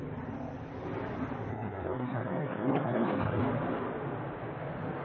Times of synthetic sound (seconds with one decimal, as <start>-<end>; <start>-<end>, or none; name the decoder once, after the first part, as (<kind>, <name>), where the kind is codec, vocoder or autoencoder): 1.5-3.4 (codec, SNAC)